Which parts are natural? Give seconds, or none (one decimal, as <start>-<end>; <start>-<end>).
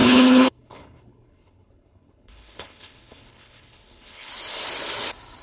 4.3-5.4